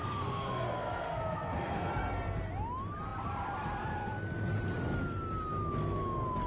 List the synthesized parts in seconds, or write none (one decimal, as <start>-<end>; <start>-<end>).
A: 0.0-1.9